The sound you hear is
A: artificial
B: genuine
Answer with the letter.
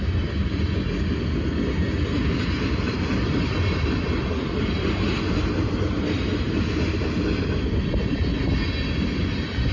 B